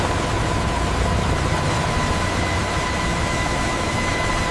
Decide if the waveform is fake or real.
real